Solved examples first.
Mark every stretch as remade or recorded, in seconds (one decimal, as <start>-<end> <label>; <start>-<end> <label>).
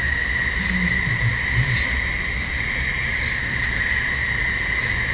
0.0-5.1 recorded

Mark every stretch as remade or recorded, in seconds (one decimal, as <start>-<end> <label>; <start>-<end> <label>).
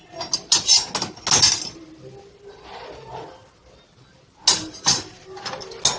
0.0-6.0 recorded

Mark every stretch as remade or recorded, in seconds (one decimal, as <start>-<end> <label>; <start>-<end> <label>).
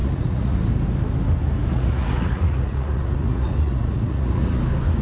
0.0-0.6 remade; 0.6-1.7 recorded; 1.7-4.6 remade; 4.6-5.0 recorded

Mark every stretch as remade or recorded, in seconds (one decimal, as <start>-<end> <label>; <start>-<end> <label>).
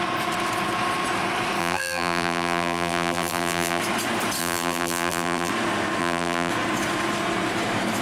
0.0-1.6 recorded; 1.6-3.8 remade; 3.8-4.4 recorded; 4.4-5.5 remade; 5.5-6.0 recorded; 6.0-6.5 remade; 6.5-8.0 recorded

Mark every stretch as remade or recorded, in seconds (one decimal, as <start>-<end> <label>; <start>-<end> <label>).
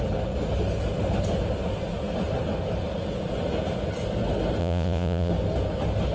0.0-4.6 recorded; 4.6-5.3 remade; 5.3-6.1 recorded